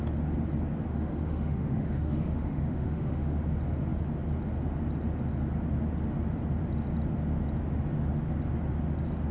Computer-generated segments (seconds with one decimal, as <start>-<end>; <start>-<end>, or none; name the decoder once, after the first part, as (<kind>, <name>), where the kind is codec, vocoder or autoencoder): 0.9-3.4 (autoencoder, DAC-VAE)